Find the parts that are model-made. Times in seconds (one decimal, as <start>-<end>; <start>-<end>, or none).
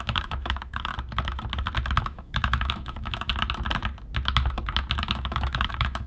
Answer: 0.0-0.9; 2.0-3.3; 5.0-6.1